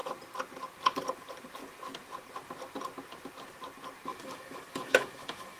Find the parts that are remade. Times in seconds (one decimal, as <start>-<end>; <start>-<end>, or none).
4.1-5.6